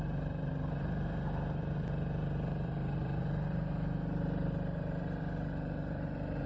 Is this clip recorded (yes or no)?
no